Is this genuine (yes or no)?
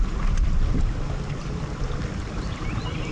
yes